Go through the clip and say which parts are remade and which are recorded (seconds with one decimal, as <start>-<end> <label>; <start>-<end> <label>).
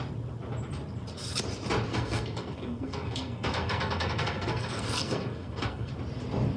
0.0-1.9 recorded; 1.9-5.9 remade; 5.9-6.6 recorded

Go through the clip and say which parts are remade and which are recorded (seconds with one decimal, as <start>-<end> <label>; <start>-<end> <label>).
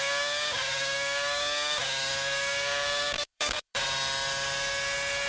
0.0-3.7 remade; 3.7-5.3 recorded